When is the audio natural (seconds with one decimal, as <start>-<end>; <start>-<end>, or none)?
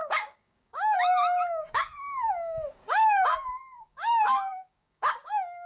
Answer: none